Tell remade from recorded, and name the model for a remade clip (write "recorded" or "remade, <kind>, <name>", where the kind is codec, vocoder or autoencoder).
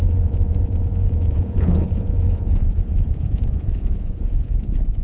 remade, vocoder, Vocos